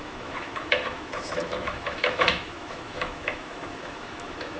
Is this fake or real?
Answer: fake